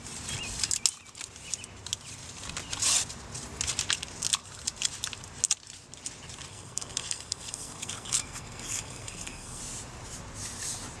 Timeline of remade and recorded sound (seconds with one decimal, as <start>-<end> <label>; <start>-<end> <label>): 0.0-6.5 recorded; 6.5-9.6 remade; 9.6-11.0 recorded